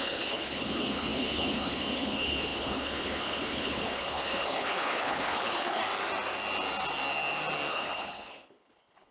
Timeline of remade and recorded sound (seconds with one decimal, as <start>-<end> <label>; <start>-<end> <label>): 0.0-5.8 remade; 5.8-7.7 recorded; 7.7-9.1 remade